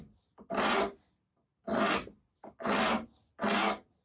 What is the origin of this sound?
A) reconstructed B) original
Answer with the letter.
B